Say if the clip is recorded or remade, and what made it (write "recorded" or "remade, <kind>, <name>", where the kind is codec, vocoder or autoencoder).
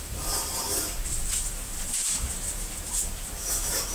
remade, vocoder, BigVGAN v2